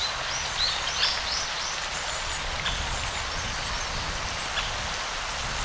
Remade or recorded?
recorded